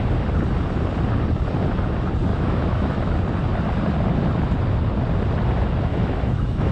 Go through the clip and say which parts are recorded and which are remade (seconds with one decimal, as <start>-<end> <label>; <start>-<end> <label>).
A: 0.0-2.3 recorded; 2.3-3.1 remade; 3.1-5.9 recorded; 5.9-6.7 remade